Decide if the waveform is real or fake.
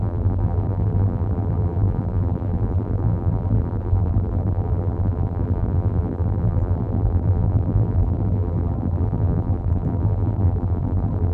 fake